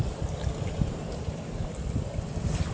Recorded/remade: recorded